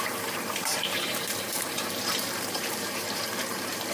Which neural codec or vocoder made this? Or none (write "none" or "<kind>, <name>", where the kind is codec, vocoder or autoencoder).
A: vocoder, BigVGAN v2